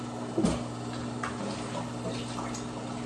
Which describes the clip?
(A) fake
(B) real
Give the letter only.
B